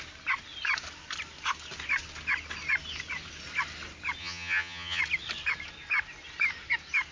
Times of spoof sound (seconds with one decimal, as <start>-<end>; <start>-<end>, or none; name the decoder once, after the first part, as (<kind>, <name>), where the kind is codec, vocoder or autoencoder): 4.2-5.0 (vocoder, HiFi-GAN)